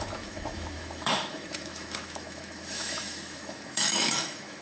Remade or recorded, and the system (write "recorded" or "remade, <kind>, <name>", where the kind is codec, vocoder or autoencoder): remade, autoencoder, DAC-VAE